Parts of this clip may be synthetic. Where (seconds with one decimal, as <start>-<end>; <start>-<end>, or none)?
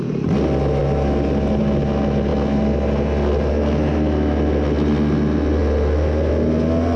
none